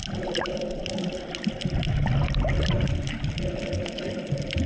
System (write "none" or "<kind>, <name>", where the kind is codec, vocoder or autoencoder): none